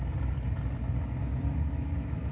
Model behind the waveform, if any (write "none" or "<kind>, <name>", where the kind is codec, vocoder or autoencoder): none